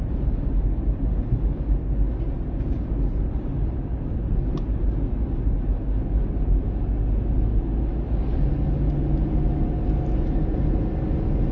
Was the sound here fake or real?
real